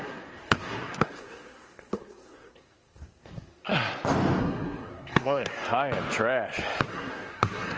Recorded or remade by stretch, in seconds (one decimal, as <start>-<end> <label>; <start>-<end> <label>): 0.0-3.7 remade; 3.7-4.4 recorded; 4.4-5.5 remade; 5.5-6.9 recorded; 6.9-7.8 remade